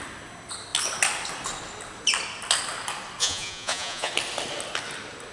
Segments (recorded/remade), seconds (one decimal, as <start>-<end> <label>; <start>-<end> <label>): 0.0-3.2 recorded; 3.2-4.1 remade; 4.1-5.3 recorded